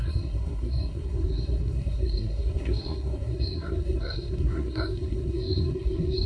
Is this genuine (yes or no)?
no